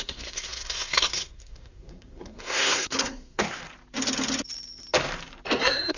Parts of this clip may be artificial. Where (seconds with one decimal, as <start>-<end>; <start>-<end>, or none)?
0.0-3.6; 5.6-6.0